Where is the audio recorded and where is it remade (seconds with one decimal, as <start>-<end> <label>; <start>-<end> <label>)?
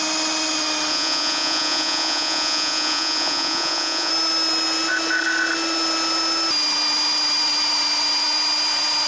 0.0-0.9 recorded; 0.9-4.1 remade; 4.1-9.1 recorded